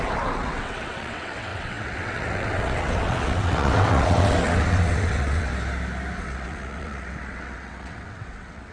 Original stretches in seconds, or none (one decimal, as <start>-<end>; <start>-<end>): 5.5-6.2